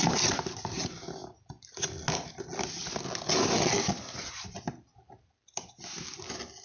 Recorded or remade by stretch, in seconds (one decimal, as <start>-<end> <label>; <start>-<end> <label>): 0.0-6.6 recorded